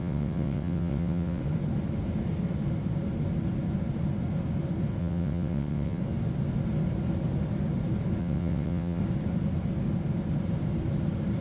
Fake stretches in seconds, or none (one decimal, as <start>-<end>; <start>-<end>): 0.0-1.4; 5.0-6.0; 8.2-9.0